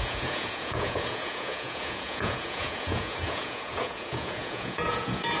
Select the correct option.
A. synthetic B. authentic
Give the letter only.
A